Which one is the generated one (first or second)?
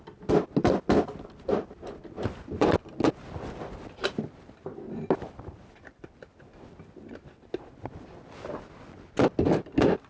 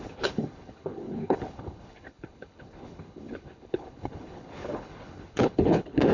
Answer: second